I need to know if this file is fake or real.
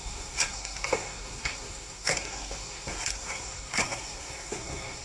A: fake